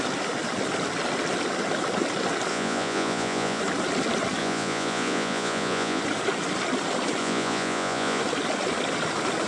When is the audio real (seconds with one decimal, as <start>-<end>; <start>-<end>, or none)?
0.0-2.5; 3.6-4.4; 6.0-7.2; 8.2-9.5